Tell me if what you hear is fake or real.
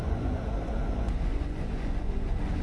fake